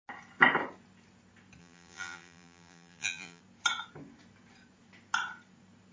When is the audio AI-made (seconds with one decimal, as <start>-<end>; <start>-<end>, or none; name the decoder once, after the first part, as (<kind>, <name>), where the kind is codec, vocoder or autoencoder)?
1.6-3.4 (vocoder, BigVGAN v2)